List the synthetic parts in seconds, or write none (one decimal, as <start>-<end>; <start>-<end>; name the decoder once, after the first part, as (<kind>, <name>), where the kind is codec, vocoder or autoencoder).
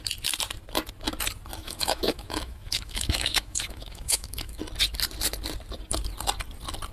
1.6-4.6 (autoencoder, DAC-VAE)